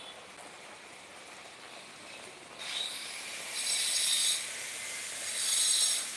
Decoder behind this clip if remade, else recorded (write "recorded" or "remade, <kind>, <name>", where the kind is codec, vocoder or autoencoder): remade, vocoder, BigVGAN v2